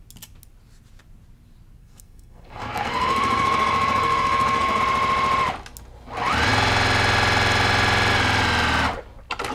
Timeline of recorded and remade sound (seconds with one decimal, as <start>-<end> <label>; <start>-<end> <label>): 0.0-1.8 recorded; 1.8-4.8 remade; 4.8-9.5 recorded